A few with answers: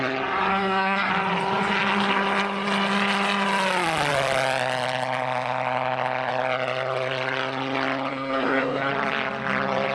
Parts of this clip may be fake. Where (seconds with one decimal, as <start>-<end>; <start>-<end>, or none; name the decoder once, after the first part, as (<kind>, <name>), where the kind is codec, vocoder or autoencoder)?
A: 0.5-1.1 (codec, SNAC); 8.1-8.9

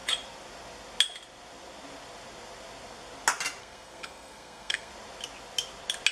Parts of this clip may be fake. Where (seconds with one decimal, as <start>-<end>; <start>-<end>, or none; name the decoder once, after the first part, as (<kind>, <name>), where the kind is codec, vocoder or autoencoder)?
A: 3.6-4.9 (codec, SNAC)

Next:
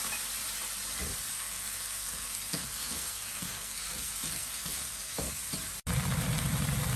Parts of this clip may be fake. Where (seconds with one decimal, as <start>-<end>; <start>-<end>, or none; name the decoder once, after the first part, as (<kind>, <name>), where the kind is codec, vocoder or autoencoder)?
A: 1.3-5.5 (codec, SNAC)

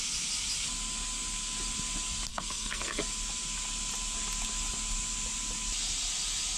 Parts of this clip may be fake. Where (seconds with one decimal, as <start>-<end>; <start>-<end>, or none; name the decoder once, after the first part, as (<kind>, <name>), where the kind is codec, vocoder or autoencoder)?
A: 2.3-3.0 (codec, SNAC)

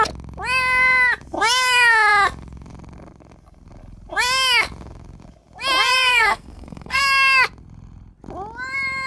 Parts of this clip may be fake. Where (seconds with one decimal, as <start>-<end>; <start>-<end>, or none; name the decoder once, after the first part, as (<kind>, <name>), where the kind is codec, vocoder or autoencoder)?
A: 6.1-7.0 (codec, SNAC)

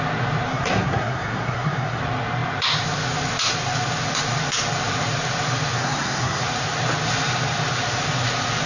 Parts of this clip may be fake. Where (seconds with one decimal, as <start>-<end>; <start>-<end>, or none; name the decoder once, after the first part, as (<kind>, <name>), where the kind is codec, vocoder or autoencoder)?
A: 0.5-2.0 (codec, SNAC); 5.8-6.4

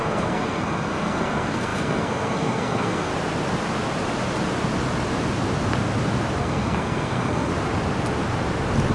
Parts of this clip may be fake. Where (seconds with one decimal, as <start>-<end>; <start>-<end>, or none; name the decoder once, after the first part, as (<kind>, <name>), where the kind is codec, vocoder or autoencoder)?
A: 0.0-3.1 (codec, SNAC); 6.4-7.5

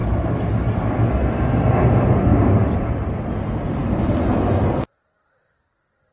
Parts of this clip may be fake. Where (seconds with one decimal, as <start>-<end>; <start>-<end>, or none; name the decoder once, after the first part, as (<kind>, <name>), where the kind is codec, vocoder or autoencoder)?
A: none